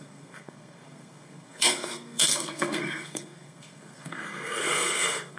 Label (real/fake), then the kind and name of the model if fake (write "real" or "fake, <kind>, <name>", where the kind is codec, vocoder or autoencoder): fake, codec, SNAC